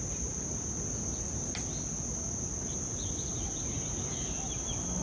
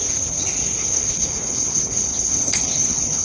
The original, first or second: first